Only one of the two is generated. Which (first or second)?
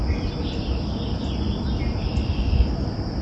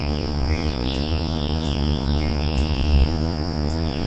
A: second